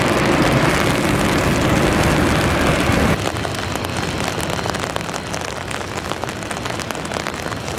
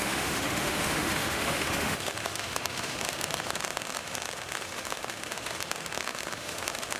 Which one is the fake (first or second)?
second